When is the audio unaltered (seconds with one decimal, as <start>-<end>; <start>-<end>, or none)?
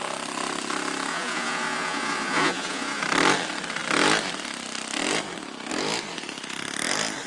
0.0-1.1; 3.0-7.3